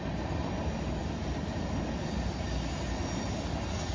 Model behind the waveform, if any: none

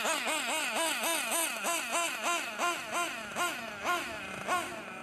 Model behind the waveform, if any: none